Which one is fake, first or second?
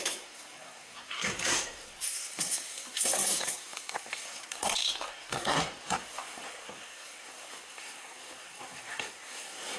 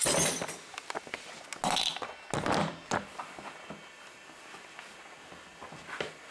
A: first